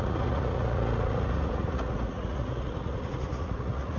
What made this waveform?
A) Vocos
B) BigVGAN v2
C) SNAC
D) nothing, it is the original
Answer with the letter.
A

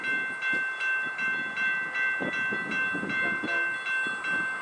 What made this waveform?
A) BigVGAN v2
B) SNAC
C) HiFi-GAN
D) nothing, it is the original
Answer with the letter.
D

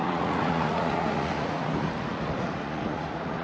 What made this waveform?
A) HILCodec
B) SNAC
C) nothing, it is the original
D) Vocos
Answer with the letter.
D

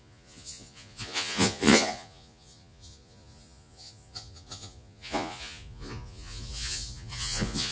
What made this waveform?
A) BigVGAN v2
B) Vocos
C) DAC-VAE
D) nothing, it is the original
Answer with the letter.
B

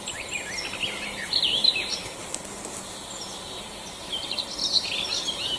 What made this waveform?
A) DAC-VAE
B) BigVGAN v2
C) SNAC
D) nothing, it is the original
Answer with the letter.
D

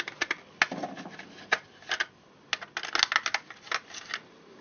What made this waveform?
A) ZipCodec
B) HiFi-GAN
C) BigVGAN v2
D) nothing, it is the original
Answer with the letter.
D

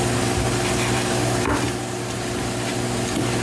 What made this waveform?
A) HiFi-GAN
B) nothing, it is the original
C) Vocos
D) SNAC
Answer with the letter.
B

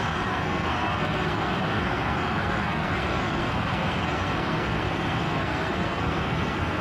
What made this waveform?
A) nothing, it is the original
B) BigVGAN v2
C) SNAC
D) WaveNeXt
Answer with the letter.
C